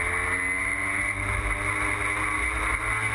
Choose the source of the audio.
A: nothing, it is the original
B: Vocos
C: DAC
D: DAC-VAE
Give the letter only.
A